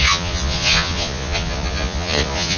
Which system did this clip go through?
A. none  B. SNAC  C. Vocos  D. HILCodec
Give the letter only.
C